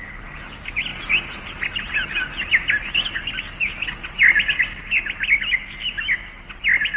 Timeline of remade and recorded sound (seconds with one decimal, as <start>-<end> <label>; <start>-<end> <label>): 0.0-7.0 recorded